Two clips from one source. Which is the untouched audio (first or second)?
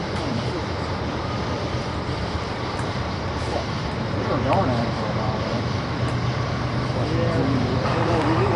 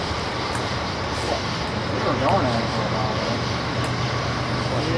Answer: second